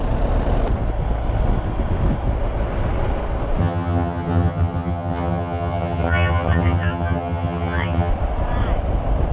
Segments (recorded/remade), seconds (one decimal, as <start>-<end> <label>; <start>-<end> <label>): 0.0-3.6 recorded; 3.6-8.1 remade; 8.1-9.3 recorded